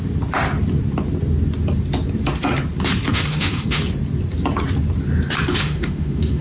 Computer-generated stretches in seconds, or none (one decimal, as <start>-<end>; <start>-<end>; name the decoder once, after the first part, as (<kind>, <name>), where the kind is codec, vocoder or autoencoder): 3.1-3.8 (autoencoder, DAC-VAE); 5.6-6.4